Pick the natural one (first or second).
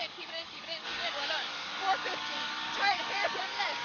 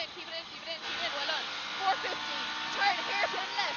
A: second